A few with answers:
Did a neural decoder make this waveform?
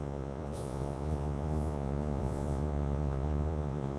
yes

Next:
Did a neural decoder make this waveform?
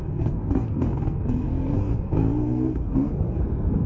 yes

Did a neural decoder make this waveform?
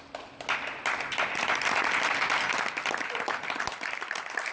no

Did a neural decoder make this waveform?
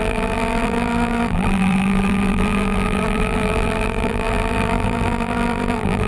yes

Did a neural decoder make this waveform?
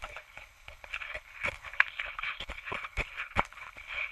yes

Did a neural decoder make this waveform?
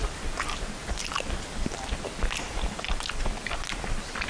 no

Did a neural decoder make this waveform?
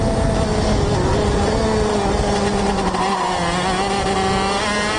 no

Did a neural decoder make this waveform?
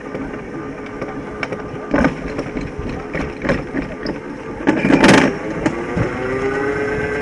no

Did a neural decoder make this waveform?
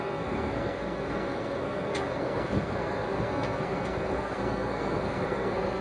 yes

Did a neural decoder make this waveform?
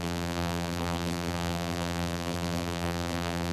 yes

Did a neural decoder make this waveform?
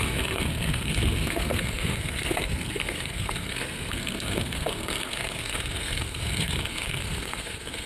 yes